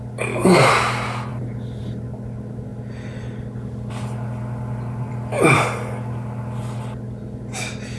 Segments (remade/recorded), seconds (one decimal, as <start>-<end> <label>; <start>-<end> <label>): 0.0-8.0 recorded